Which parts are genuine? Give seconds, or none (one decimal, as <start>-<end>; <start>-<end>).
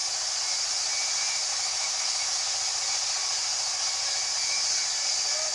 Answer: 0.0-1.5; 2.4-5.5